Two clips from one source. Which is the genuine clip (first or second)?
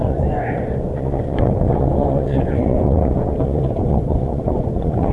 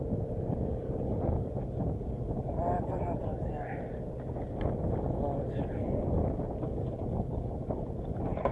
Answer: second